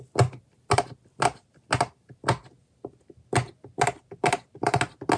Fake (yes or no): no